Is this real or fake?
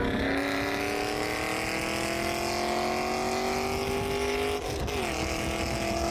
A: real